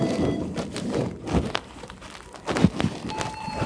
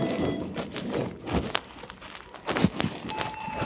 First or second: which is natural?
second